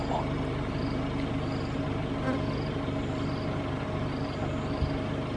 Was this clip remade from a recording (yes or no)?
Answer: no